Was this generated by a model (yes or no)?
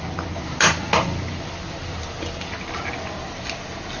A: no